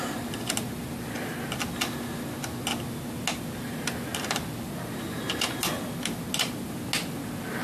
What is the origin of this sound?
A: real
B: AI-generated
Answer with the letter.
A